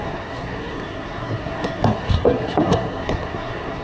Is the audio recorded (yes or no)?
no